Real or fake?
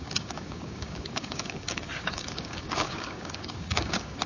fake